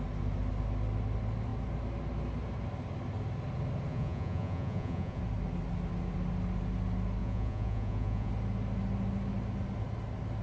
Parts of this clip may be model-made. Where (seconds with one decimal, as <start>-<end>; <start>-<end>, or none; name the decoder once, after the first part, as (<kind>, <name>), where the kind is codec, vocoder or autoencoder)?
3.9-5.2 (vocoder, Vocos); 7.2-8.3